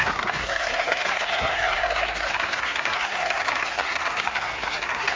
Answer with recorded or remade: remade